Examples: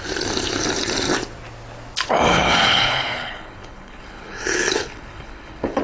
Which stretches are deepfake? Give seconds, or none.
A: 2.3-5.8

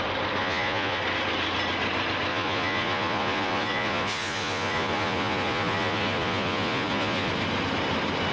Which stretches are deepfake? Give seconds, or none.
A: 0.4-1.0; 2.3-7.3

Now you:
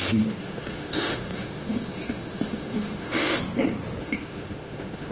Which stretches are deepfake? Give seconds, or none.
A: 0.4-3.4; 4.0-5.1